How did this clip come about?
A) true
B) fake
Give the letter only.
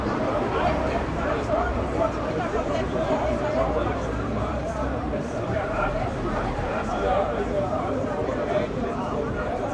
B